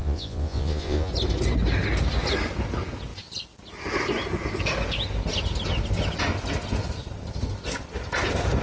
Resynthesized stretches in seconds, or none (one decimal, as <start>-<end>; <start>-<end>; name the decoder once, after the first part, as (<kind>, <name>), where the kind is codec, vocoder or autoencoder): 0.0-1.1 (vocoder, Vocos)